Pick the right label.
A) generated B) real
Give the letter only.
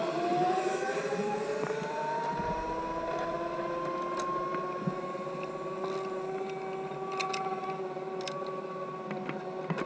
B